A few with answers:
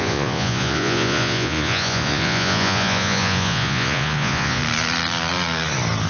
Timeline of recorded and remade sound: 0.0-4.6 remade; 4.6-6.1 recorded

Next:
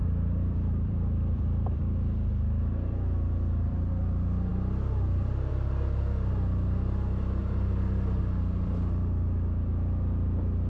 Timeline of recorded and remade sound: 0.0-1.8 remade; 1.8-7.4 recorded; 7.4-8.2 remade; 8.2-10.7 recorded